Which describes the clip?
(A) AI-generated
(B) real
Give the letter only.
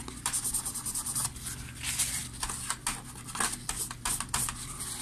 B